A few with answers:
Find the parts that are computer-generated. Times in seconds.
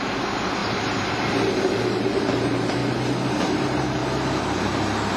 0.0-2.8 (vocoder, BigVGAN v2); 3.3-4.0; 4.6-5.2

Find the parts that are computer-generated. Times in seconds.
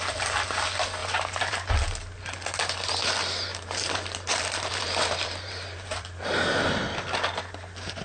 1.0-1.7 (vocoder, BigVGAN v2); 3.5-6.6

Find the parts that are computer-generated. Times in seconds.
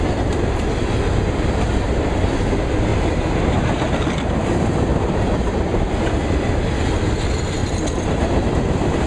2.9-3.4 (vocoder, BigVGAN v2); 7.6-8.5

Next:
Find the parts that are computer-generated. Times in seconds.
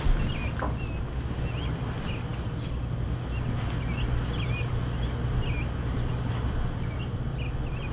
2.3-4.7 (vocoder, BigVGAN v2)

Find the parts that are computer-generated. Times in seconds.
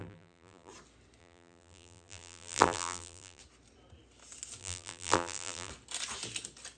0.0-0.7 (vocoder, BigVGAN v2); 1.2-3.4; 4.6-5.7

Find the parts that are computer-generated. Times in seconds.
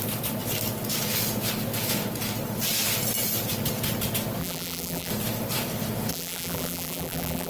4.4-5.1 (vocoder, BigVGAN v2); 6.1-7.5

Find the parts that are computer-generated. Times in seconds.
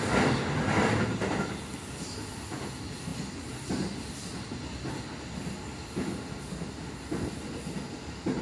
none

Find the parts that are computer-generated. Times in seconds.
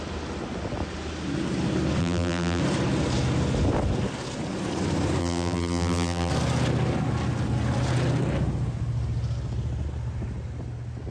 2.0-2.6 (vocoder, BigVGAN v2); 5.2-6.3